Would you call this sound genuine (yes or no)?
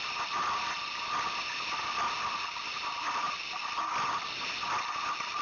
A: yes